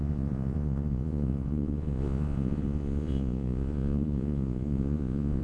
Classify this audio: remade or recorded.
remade